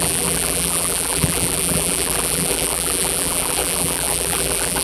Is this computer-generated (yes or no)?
yes